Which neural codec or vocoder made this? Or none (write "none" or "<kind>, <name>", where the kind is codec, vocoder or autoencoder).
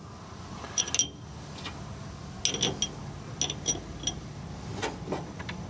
none